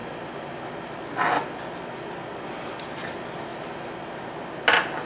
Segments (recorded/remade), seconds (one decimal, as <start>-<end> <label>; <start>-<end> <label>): 0.0-0.6 remade; 0.6-5.1 recorded